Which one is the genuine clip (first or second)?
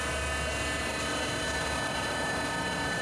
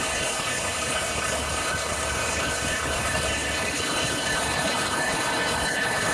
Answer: first